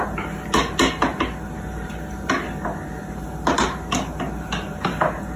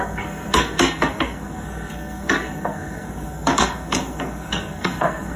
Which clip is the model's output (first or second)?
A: second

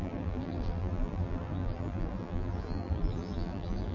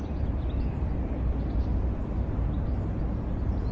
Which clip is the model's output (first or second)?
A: first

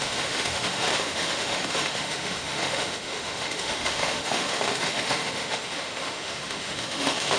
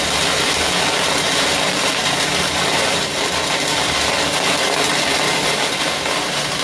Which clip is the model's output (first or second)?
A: first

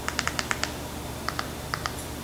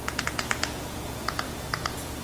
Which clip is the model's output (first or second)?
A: second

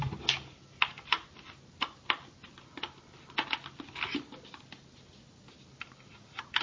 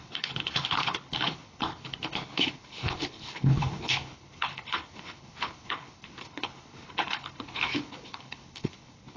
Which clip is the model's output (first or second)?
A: second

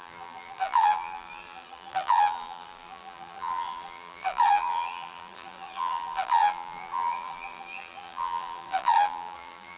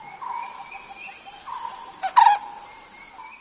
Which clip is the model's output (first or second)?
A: first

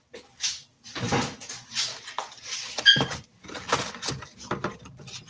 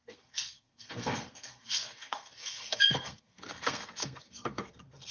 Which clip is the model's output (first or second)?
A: second